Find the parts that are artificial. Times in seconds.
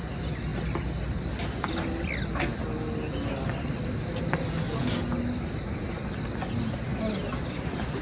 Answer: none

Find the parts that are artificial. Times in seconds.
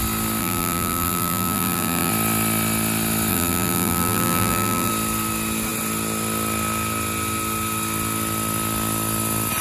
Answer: 0.4-2.1 (vocoder, BigVGAN v2); 3.3-4.9